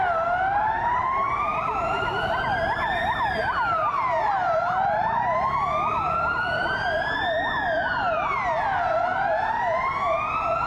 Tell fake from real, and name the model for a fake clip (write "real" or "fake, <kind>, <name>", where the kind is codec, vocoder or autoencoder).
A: real